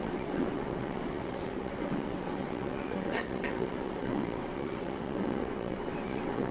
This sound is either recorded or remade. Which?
remade